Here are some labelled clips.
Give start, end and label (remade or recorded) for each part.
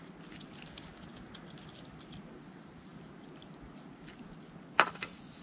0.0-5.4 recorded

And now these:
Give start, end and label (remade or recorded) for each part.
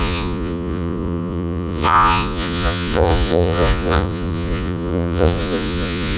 0.0-6.2 remade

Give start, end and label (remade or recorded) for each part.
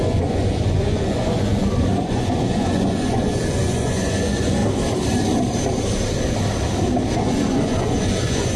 0.0-4.6 remade; 4.6-7.1 recorded; 7.1-8.6 remade